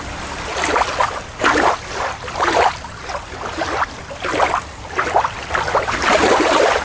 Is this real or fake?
real